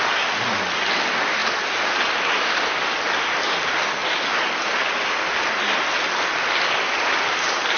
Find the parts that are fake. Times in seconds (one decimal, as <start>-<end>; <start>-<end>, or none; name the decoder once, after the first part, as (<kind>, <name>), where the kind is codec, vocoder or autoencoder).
none